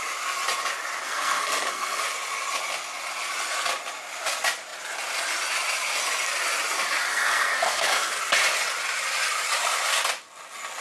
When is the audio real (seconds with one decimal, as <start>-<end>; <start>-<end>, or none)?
0.0-1.0; 2.0-7.1; 8.2-10.8

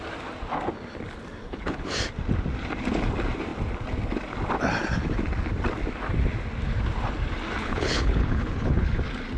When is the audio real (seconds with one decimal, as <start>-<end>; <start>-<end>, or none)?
0.0-1.4; 1.9-7.6; 9.0-9.4

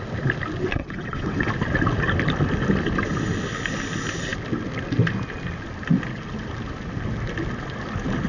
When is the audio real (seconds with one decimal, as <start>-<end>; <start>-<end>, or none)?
0.0-0.7; 1.5-8.3

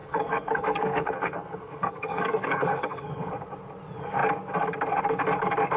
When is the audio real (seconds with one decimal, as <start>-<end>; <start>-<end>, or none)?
3.3-5.8

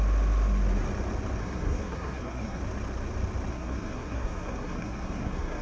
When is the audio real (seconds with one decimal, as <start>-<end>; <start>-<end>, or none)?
0.0-1.4; 2.6-3.5

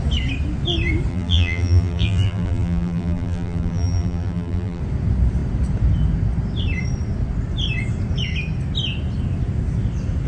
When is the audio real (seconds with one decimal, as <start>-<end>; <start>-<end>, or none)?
0.0-1.1; 4.8-10.3